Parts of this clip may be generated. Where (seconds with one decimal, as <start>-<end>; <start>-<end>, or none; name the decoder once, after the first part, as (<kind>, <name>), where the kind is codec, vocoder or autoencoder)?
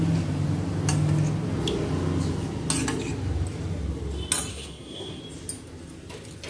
4.5-5.2 (codec, SNAC)